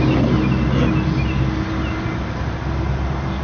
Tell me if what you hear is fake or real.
real